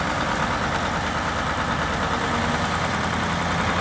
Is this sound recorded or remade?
recorded